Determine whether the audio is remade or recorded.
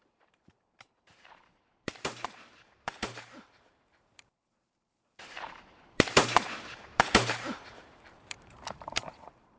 remade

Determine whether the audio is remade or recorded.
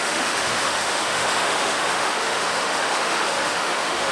remade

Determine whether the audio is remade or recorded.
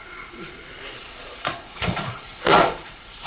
remade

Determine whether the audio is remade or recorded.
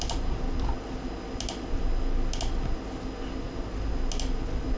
recorded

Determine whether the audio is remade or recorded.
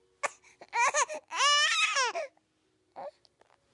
recorded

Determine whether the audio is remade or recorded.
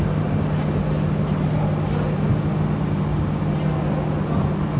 recorded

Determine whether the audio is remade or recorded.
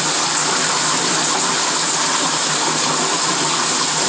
recorded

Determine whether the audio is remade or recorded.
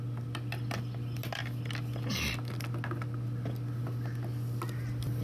recorded